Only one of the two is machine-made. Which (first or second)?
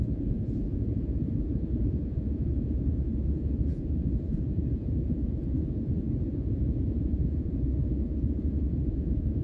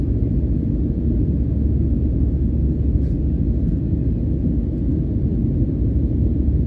first